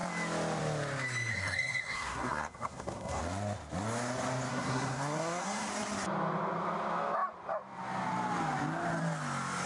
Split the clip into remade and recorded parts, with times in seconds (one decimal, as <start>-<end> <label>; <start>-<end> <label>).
0.0-1.3 recorded; 1.3-3.2 remade; 3.2-4.5 recorded; 4.5-5.7 remade; 5.7-9.7 recorded